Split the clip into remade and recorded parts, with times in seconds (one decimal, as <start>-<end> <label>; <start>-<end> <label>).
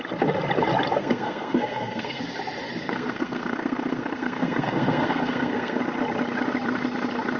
0.0-1.0 recorded; 1.0-2.2 remade; 2.2-2.8 recorded; 2.8-5.8 remade; 5.8-7.4 recorded